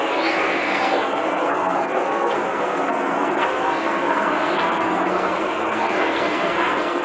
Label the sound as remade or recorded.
remade